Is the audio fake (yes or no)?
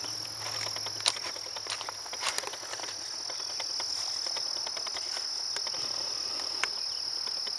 no